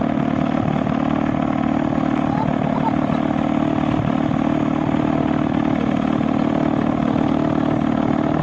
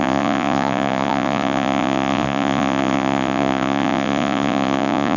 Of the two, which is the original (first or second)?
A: first